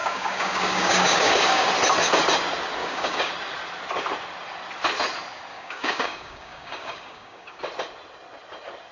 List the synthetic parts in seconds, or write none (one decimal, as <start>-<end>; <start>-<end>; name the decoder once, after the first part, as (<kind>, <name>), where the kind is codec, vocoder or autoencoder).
0.0-1.7 (codec, DAC); 2.8-3.3; 5.5-7.6